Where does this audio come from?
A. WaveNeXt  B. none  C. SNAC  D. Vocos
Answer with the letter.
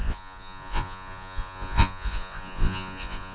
D